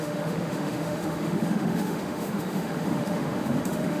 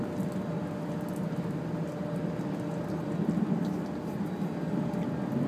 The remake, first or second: first